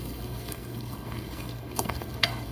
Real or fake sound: fake